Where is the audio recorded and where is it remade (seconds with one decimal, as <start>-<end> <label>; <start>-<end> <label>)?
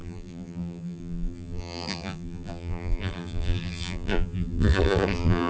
0.0-5.5 remade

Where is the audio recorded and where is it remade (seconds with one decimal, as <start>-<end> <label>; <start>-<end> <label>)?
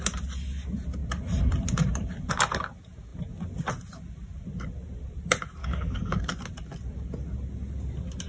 0.0-5.6 recorded; 5.6-6.3 remade; 6.3-8.3 recorded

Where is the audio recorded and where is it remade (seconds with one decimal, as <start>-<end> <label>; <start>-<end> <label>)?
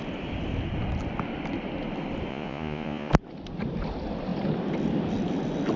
0.0-2.3 recorded; 2.3-3.1 remade; 3.1-5.8 recorded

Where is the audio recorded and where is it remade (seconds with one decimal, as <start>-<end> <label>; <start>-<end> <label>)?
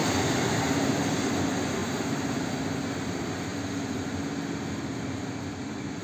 0.0-1.3 remade; 1.3-1.8 recorded; 1.8-2.4 remade; 2.4-3.5 recorded; 3.5-4.0 remade; 4.0-6.0 recorded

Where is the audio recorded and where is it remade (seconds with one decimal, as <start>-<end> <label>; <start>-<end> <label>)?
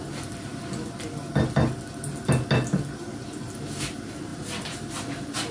0.0-4.3 recorded; 4.3-4.9 remade; 4.9-5.5 recorded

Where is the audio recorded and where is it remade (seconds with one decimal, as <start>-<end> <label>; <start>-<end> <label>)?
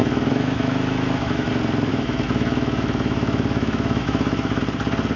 0.0-1.5 remade; 1.5-1.9 recorded; 1.9-4.6 remade; 4.6-5.2 recorded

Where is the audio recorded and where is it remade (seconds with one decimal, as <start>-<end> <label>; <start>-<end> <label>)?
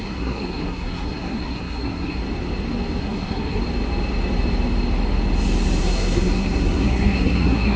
0.0-2.2 remade; 2.2-3.0 recorded; 3.0-3.6 remade; 3.6-5.8 recorded; 5.8-7.8 remade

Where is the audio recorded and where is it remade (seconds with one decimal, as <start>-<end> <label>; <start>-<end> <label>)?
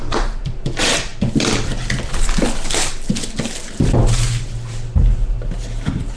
0.0-6.2 recorded